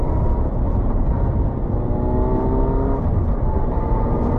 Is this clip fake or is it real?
real